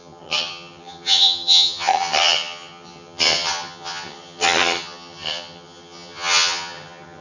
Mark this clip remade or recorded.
remade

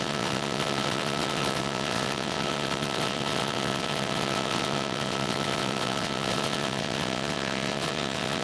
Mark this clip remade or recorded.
remade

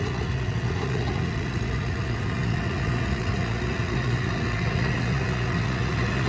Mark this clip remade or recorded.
remade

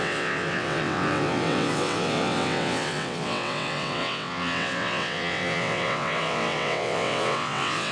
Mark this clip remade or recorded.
remade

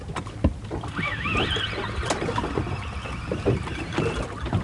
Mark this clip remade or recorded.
recorded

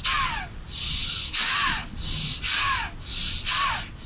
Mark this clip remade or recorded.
recorded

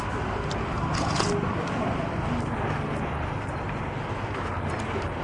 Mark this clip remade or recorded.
recorded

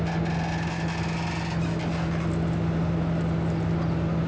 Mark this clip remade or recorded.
recorded